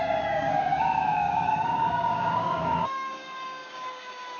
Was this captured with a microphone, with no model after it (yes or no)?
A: no